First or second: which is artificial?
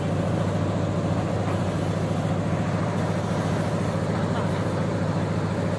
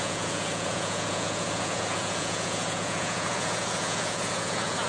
second